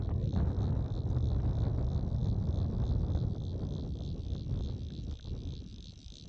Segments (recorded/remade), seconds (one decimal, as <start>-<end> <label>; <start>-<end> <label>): 0.0-6.3 recorded